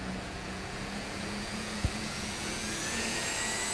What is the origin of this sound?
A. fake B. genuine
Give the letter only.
A